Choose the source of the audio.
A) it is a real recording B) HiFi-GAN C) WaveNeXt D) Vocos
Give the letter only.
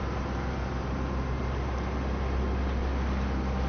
A